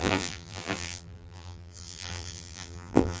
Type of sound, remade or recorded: remade